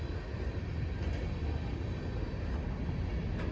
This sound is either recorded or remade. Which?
recorded